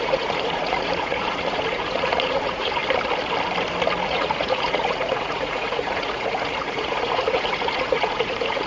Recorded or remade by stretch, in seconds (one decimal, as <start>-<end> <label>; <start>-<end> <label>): 0.0-2.8 remade; 2.8-4.0 recorded; 4.0-8.7 remade